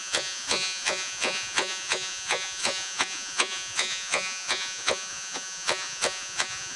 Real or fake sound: fake